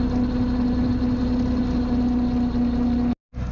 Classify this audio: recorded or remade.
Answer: recorded